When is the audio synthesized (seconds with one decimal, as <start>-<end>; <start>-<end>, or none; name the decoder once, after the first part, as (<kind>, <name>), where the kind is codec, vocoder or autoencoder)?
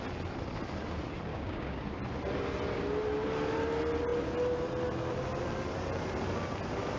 1.3-1.8 (codec, DAC)